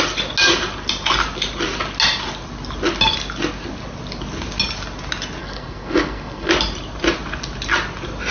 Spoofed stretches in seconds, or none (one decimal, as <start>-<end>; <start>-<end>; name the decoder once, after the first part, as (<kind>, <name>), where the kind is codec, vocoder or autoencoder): 5.4-6.5 (codec, SNAC)